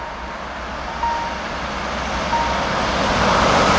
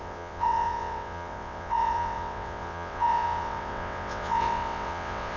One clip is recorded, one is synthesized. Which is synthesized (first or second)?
second